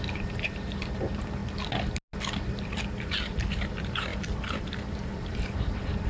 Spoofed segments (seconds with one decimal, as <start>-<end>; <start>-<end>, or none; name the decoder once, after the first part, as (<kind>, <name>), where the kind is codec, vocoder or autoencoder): 0.0-1.4 (vocoder, BigVGAN v2); 3.5-4.1; 4.6-6.1